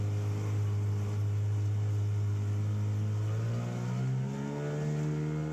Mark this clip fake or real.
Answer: real